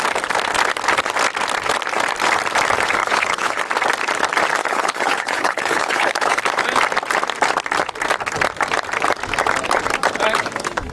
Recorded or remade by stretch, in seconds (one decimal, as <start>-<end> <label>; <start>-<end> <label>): 0.0-3.0 recorded; 3.0-3.6 remade; 3.6-4.6 recorded; 4.6-6.4 remade; 6.4-10.9 recorded

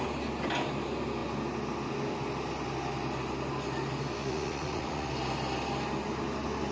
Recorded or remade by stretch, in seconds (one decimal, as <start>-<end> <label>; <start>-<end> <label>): 0.0-4.2 recorded; 4.2-5.1 remade; 5.1-6.7 recorded

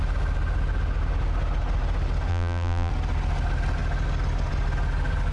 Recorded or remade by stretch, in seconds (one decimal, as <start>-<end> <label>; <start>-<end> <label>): 0.0-2.3 recorded; 2.3-2.9 remade; 2.9-5.3 recorded

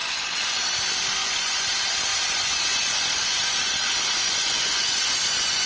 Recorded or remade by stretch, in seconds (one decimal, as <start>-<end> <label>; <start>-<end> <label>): 0.0-0.6 remade; 0.6-1.2 recorded; 1.2-1.7 remade; 1.7-2.1 recorded; 2.1-5.7 remade